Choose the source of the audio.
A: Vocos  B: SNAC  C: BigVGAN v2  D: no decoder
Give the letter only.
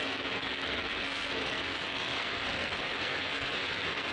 B